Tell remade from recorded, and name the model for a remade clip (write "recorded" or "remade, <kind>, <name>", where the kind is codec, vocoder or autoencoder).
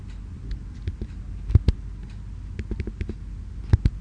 recorded